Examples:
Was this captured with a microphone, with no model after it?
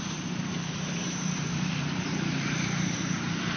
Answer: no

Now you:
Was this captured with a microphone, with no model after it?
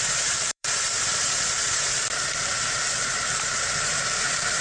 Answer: no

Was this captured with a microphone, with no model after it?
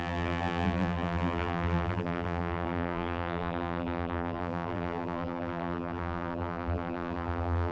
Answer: no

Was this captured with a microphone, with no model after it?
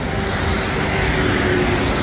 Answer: yes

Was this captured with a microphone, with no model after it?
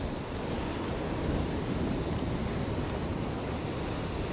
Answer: yes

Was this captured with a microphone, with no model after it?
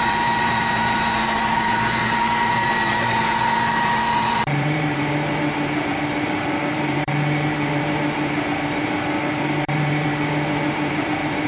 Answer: no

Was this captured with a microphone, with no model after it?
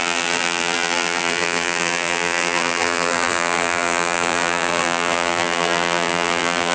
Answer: no